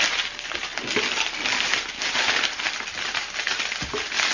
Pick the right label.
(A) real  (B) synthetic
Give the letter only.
A